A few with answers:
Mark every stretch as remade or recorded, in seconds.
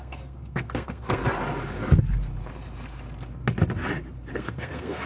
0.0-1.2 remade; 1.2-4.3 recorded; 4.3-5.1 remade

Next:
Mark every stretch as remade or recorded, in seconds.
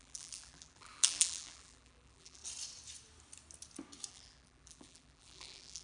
0.0-2.4 remade; 2.4-4.1 recorded; 4.1-5.8 remade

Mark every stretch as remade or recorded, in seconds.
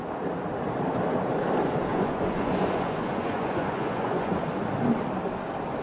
0.0-1.9 recorded; 1.9-4.3 remade; 4.3-5.8 recorded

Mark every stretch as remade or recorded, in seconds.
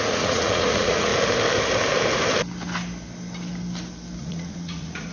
0.0-1.1 remade; 1.1-4.2 recorded; 4.2-5.1 remade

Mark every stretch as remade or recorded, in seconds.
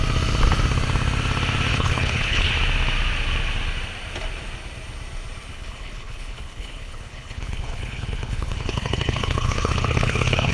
0.0-1.7 recorded; 1.7-2.5 remade; 2.5-5.5 recorded; 5.5-10.5 remade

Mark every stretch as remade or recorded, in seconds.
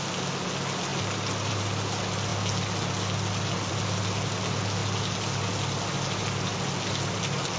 0.0-0.9 recorded; 0.9-1.5 remade; 1.5-7.6 recorded